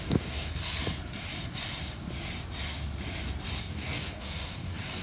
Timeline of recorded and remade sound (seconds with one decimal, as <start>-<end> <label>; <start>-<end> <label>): 0.0-0.6 remade; 0.6-3.6 recorded; 3.6-5.0 remade

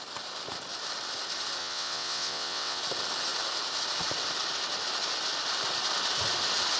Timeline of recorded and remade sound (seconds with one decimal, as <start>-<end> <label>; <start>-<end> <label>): 0.0-1.6 recorded; 1.6-2.8 remade; 2.8-6.8 recorded

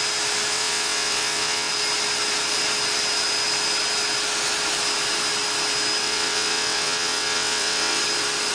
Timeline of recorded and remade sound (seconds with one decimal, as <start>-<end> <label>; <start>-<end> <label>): 0.0-0.5 recorded; 0.5-1.7 remade; 1.7-6.0 recorded; 6.0-8.0 remade; 8.0-8.5 recorded

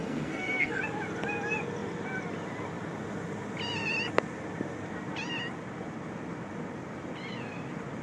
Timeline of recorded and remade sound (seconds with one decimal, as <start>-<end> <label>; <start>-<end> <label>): 0.0-0.8 remade; 0.8-8.0 recorded

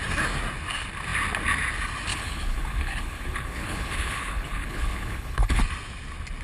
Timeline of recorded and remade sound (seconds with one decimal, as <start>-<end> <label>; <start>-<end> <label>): 0.0-2.1 recorded; 2.1-5.6 remade; 5.6-6.4 recorded

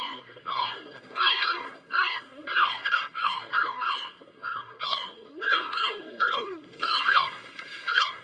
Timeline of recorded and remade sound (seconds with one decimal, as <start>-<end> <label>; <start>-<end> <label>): 0.0-8.2 remade

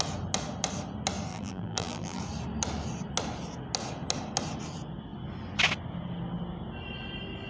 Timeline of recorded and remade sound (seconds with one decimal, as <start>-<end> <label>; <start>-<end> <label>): 0.0-1.3 recorded; 1.3-2.2 remade; 2.2-7.5 recorded